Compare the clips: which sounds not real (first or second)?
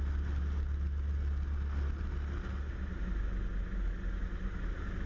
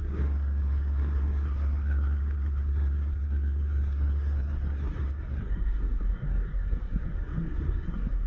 second